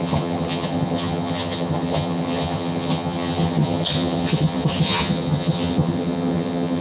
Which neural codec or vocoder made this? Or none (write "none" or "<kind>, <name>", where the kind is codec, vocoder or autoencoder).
vocoder, HiFi-GAN